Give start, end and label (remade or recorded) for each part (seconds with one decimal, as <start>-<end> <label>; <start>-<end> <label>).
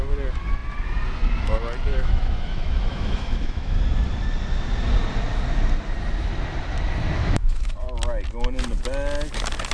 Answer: 0.0-1.9 recorded; 1.9-3.8 remade; 3.8-7.2 recorded; 7.2-7.7 remade; 7.7-9.7 recorded